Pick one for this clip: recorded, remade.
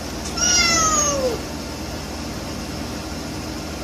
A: remade